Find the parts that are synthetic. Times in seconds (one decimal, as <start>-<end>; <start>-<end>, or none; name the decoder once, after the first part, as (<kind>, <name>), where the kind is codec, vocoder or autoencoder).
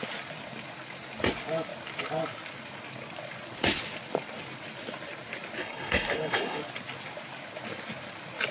5.6-6.6 (codec, HILCodec)